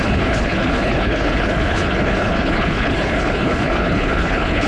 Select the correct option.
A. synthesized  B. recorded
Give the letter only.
A